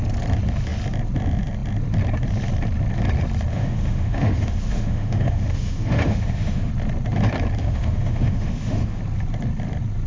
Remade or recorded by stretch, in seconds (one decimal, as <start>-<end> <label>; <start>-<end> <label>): 0.0-3.5 recorded; 3.5-6.7 remade; 6.7-7.6 recorded; 7.6-9.0 remade; 9.0-10.1 recorded